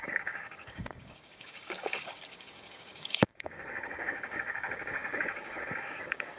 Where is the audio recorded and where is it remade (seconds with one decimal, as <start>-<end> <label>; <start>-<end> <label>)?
0.0-6.4 remade